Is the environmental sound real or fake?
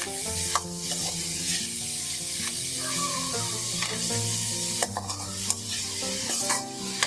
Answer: real